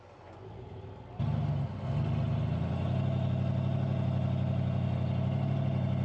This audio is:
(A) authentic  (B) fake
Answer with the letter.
A